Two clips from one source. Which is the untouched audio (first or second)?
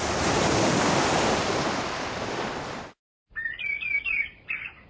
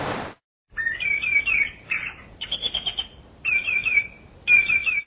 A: first